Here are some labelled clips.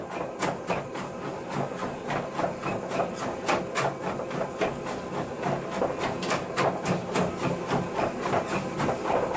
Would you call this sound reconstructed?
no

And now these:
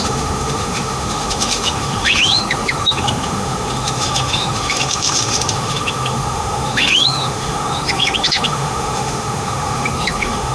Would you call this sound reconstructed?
yes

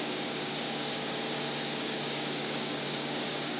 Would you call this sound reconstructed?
yes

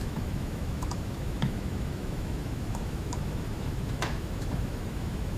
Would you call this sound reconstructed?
yes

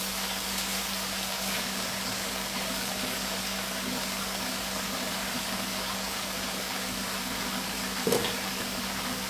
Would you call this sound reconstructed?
yes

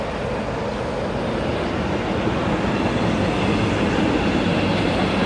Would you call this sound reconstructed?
no